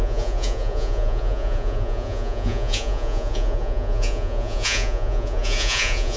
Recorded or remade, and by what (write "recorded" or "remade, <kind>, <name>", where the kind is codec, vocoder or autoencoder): remade, vocoder, Vocos